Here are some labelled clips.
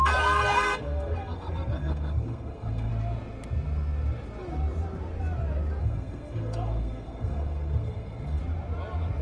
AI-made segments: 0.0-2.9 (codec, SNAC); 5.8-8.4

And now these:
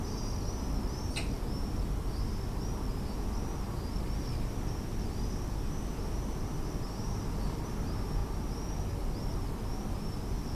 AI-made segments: none

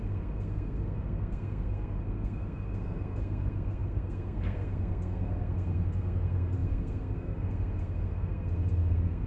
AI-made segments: 0.0-9.3 (codec, SNAC)

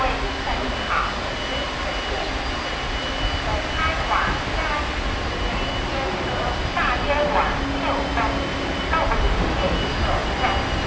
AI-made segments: none